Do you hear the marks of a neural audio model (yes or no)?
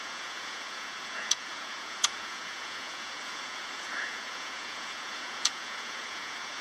yes